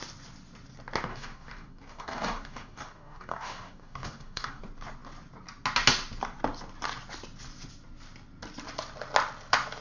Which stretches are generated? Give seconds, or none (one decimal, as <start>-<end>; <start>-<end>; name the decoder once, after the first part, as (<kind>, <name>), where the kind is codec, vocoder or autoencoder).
1.1-4.6 (codec, DAC)